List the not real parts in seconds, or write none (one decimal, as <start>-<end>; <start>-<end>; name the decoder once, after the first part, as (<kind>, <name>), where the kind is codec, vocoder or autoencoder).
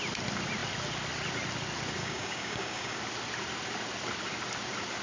2.0-3.0 (codec, DAC)